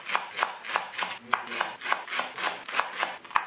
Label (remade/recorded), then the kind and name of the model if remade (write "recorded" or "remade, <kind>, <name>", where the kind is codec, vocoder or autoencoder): recorded